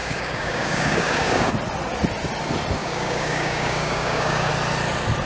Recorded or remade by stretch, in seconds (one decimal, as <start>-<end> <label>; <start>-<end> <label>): 0.0-1.5 remade; 1.5-2.8 recorded; 2.8-4.5 remade; 4.5-5.3 recorded

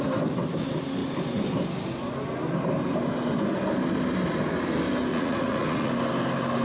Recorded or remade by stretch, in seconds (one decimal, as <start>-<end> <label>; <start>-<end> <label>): 0.0-5.1 recorded; 5.1-5.9 remade; 5.9-6.6 recorded

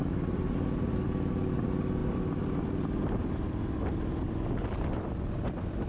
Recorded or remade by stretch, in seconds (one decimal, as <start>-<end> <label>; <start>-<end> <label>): 0.0-5.9 recorded

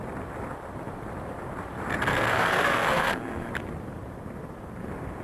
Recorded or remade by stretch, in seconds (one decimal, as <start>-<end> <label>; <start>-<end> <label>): 0.0-2.1 recorded; 2.1-3.5 remade; 3.5-5.2 recorded

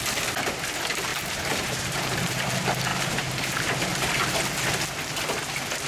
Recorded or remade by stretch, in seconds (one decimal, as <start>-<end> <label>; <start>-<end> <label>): 0.0-1.1 recorded; 1.1-2.5 remade; 2.5-2.9 recorded; 2.9-3.5 remade; 3.5-3.9 recorded; 3.9-4.4 remade; 4.4-5.9 recorded

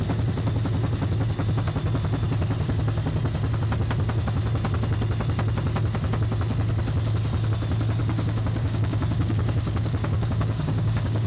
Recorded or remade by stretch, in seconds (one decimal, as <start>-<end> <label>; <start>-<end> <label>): 0.0-8.0 recorded; 8.0-11.3 remade

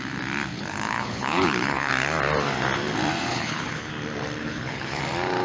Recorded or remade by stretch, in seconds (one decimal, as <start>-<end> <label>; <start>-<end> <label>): 0.0-0.5 recorded; 0.5-1.9 remade; 1.9-3.3 recorded; 3.3-3.9 remade; 3.9-4.4 recorded; 4.4-5.0 remade; 5.0-5.4 recorded

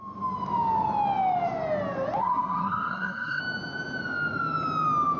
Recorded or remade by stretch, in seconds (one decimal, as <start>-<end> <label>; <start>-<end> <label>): 0.0-2.2 recorded; 2.2-3.4 remade; 3.4-5.2 recorded